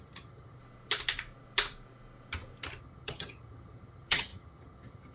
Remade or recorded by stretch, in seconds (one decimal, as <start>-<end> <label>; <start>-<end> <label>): 0.0-0.6 remade; 0.6-2.8 recorded; 2.8-5.1 remade